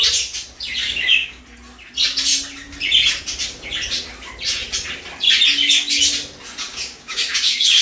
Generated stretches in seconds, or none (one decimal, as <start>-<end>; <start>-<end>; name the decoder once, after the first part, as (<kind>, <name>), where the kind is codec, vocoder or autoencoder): 0.8-1.4 (codec, DAC); 6.7-7.8